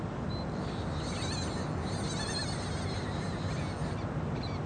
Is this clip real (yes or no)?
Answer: yes